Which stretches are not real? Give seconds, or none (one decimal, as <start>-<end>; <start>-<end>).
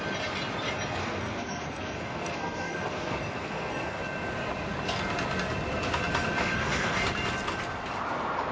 1.0-4.0; 6.4-7.0